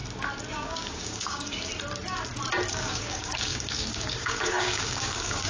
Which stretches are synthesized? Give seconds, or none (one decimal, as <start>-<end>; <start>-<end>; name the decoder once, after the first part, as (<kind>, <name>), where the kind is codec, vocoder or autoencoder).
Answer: 0.5-1.7 (codec, DAC); 2.7-5.5